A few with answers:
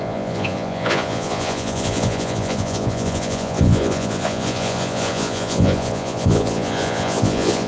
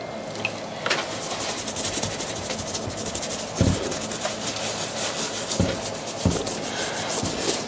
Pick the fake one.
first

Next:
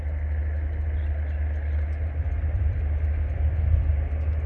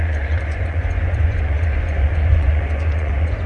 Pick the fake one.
second